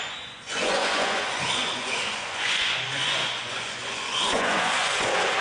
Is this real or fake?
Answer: fake